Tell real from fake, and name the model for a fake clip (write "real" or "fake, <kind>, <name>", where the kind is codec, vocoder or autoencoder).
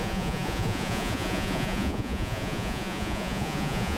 fake, vocoder, Vocos